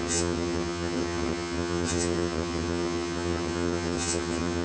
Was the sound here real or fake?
fake